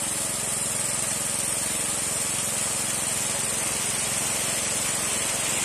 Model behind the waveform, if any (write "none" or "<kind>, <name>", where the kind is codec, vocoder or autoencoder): none